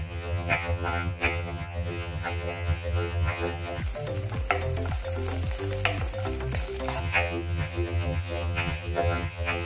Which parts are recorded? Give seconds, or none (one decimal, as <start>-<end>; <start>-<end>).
3.8-7.0